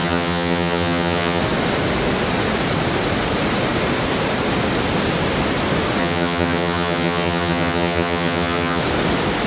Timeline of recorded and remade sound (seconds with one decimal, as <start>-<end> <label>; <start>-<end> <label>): 0.0-1.4 remade; 1.4-6.0 recorded; 6.0-8.8 remade; 8.8-9.5 recorded